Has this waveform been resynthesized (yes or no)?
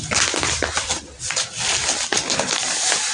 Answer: no